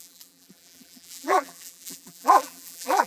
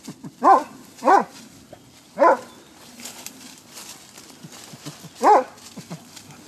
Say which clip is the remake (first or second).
first